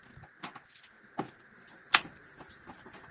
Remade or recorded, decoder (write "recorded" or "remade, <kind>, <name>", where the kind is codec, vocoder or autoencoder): recorded